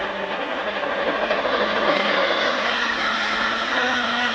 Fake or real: fake